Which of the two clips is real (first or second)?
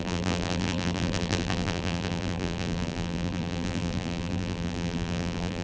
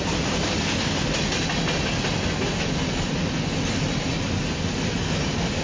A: second